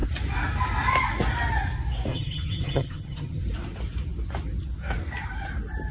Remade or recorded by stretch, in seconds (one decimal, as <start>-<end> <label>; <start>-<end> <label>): 0.0-2.1 recorded; 2.1-3.4 remade; 3.4-5.9 recorded